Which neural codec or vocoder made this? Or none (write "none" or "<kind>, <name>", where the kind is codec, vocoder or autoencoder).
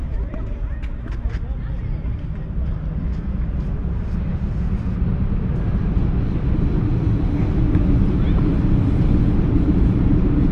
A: none